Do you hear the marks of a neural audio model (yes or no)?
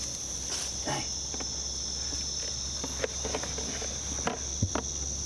no